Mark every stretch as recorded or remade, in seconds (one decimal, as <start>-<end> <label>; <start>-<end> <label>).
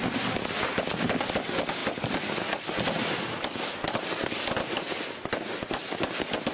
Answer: 0.0-6.5 recorded